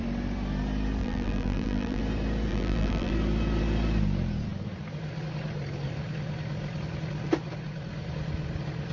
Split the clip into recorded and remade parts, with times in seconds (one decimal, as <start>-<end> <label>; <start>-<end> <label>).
0.0-1.0 recorded; 1.0-2.0 remade; 2.0-2.5 recorded; 2.5-3.1 remade; 3.1-8.9 recorded